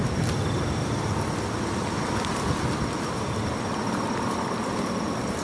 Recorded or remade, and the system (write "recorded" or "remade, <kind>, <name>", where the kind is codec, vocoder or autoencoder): recorded